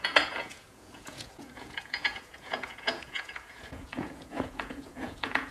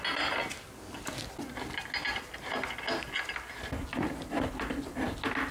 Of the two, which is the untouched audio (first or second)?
second